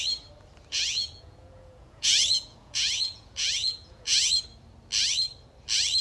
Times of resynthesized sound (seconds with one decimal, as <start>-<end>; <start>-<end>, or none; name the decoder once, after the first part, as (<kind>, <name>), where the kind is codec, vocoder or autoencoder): 0.7-4.3 (vocoder, Vocos)